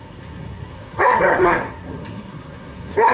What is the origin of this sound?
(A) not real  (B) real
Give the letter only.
A